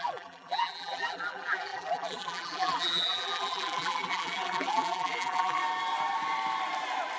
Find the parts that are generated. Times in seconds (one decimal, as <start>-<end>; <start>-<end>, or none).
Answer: 0.0-5.6